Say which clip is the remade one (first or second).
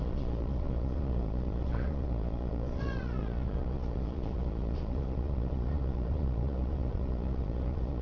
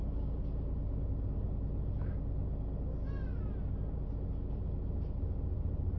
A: first